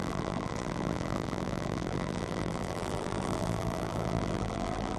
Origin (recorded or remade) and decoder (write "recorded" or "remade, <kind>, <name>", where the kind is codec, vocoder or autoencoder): remade, vocoder, BigVGAN v2